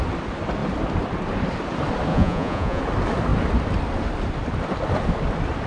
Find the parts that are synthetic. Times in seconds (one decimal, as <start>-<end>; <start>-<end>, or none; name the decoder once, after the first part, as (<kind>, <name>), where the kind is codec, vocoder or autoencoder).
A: 2.1-2.8 (vocoder, Vocos)